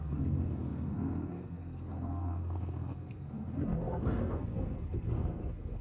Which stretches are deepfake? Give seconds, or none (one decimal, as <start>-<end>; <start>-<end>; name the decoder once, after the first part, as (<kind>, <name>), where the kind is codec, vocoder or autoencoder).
0.0-5.8 (codec, SNAC)